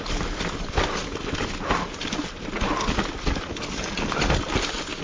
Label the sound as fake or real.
real